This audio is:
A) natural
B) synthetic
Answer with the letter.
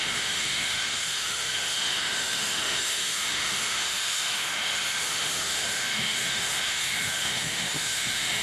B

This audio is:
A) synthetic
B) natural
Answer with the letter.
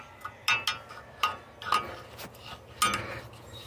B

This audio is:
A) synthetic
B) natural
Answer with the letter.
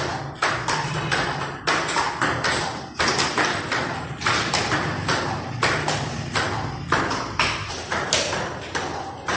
B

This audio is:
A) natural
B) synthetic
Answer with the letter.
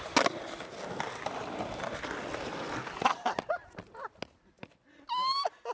A